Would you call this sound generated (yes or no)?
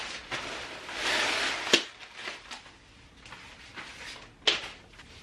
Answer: no